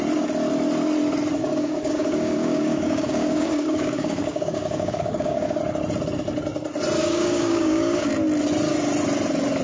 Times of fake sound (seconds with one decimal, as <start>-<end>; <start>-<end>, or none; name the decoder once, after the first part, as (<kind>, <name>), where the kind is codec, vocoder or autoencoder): 1.4-5.6 (codec, DAC); 7.0-8.1